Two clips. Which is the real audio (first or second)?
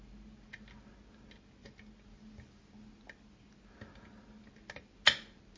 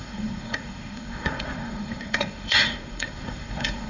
first